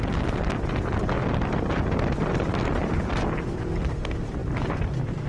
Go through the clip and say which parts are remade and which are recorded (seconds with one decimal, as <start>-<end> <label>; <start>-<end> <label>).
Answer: 0.0-2.8 recorded; 2.8-3.9 remade; 3.9-4.4 recorded; 4.4-5.3 remade